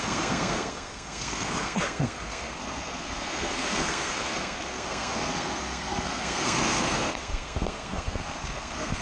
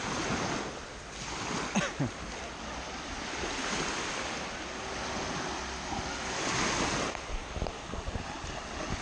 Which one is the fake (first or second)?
first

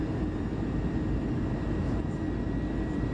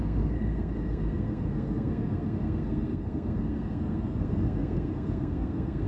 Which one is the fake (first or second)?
second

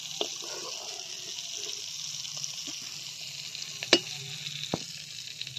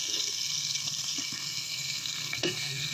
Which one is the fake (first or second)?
second